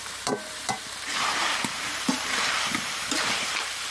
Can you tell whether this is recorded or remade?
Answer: remade